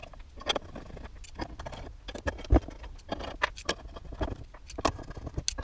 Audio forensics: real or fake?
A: real